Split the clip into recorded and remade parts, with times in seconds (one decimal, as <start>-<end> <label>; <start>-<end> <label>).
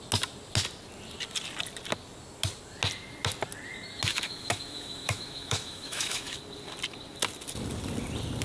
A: 0.0-4.1 recorded; 4.1-6.4 remade; 6.4-8.4 recorded